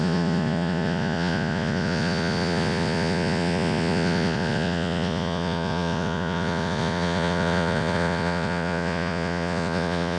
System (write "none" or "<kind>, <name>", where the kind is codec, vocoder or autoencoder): vocoder, Vocos